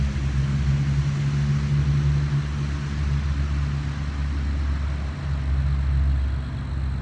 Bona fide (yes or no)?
yes